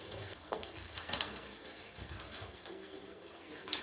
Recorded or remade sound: remade